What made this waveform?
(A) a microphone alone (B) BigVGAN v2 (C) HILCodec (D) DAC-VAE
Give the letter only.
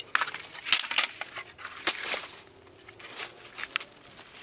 A